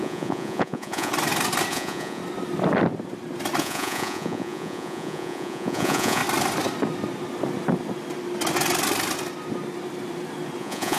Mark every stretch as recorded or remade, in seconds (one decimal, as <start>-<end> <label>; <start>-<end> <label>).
0.0-1.1 remade; 1.1-1.7 recorded; 1.7-2.2 remade; 2.2-3.6 recorded; 3.6-6.2 remade; 6.2-10.6 recorded; 10.6-11.0 remade